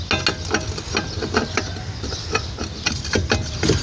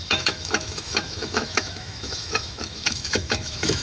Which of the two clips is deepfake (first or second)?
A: second